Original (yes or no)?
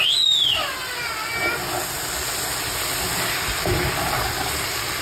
yes